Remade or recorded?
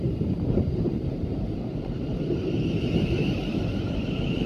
remade